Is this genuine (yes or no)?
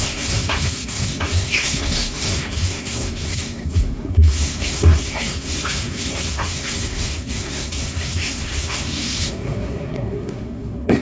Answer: no